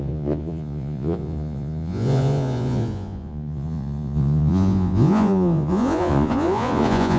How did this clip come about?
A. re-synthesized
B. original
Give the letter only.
A